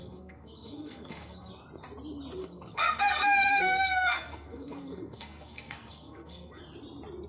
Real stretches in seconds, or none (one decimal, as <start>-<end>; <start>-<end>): 1.5-2.4; 6.6-7.3